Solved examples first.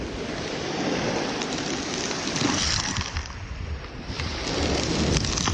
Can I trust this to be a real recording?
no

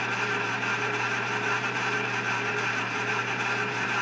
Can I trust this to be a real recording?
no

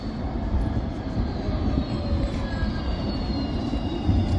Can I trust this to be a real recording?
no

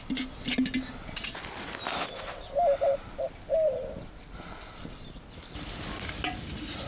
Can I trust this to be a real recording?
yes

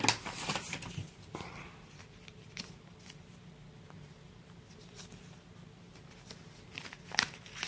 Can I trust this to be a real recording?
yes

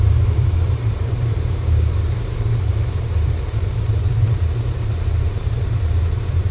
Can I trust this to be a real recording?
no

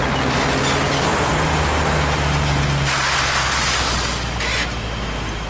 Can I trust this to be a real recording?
yes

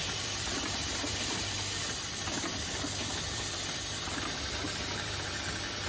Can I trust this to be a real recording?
no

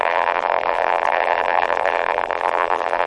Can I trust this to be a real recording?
no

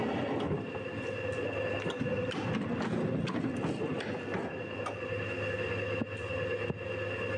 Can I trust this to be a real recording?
yes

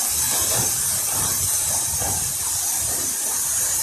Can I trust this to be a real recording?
no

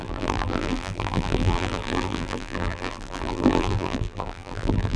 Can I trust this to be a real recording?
no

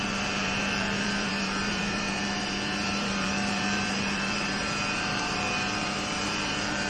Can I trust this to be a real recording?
no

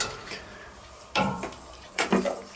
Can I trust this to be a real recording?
no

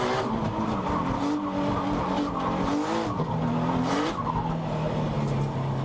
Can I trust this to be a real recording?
yes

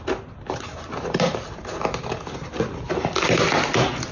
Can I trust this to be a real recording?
yes